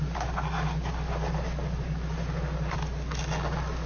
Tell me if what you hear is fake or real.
real